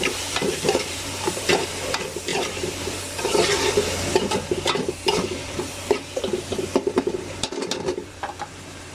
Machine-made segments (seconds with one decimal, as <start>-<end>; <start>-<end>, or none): 0.0-8.9